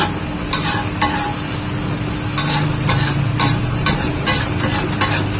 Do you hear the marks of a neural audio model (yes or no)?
no